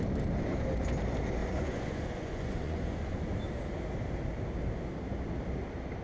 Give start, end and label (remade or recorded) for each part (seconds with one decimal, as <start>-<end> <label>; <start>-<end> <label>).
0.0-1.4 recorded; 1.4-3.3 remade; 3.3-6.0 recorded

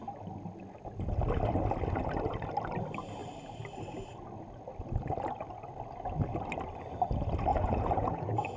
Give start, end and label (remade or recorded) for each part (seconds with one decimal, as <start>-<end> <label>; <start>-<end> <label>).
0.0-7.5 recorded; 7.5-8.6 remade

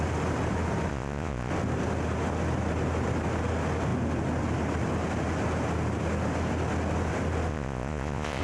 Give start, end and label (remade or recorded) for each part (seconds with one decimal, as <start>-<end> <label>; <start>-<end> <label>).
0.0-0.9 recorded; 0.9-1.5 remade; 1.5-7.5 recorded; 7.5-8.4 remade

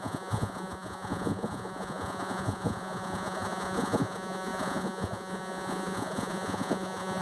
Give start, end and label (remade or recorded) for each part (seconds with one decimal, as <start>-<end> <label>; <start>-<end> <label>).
0.0-7.2 remade

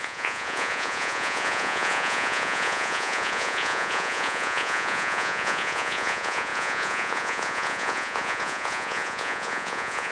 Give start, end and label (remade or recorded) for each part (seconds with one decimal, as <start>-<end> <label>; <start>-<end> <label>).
0.0-10.1 remade

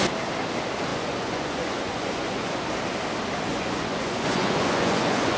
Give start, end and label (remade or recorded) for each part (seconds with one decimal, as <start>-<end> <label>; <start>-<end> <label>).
0.0-0.9 recorded; 0.9-2.6 remade; 2.6-3.5 recorded; 3.5-5.4 remade

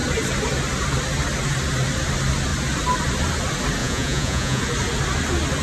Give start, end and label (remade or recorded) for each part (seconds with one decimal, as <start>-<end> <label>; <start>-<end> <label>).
0.0-3.8 recorded; 3.8-4.6 remade; 4.6-5.6 recorded